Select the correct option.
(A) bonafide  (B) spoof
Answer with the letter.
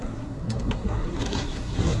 B